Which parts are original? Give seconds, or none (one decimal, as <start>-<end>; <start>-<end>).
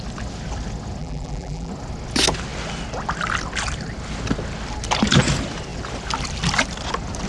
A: 0.0-1.0; 1.7-7.3